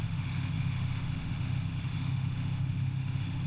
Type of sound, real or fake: fake